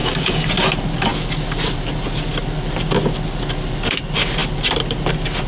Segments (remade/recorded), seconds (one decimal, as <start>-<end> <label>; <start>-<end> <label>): 0.0-0.5 remade; 0.5-5.5 recorded